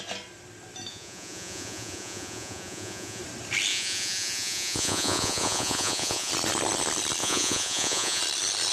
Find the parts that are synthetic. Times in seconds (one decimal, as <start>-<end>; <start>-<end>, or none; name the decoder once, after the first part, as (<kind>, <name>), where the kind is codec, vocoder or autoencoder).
0.9-3.2 (vocoder, Vocos); 3.7-6.3; 7.2-8.2